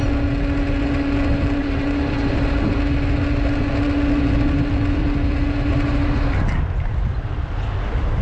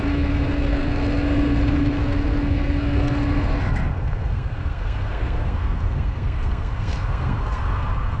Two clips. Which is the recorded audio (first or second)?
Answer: first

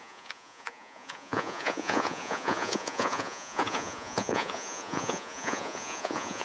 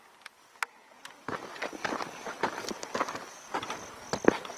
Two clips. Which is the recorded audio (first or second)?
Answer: second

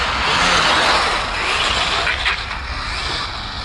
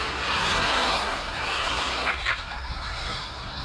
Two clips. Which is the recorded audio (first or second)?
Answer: first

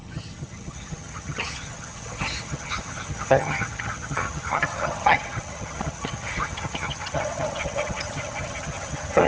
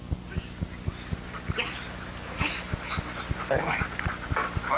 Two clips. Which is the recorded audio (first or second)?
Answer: second